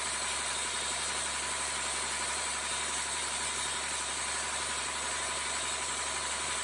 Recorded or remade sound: recorded